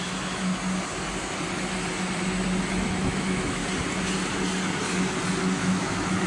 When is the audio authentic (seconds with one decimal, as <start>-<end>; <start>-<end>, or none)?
0.5-2.6; 3.6-5.4